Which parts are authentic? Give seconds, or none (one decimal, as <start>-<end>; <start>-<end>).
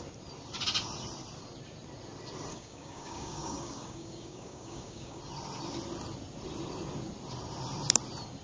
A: 0.0-2.5; 5.2-8.4